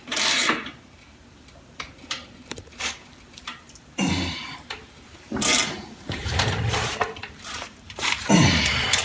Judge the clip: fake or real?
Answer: fake